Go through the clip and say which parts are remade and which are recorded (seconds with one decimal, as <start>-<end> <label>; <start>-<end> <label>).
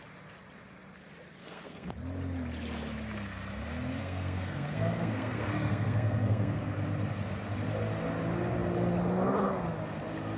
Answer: 0.0-1.4 recorded; 1.4-1.9 remade; 1.9-4.0 recorded; 4.0-6.6 remade; 6.6-10.4 recorded